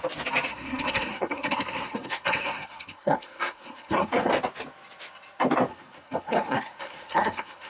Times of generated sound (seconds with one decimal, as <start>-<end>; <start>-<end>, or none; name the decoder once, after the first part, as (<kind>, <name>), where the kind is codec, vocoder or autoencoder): 0.5-4.3 (codec, SNAC); 5.7-7.7